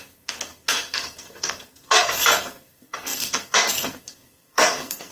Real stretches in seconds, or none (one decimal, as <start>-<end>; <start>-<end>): none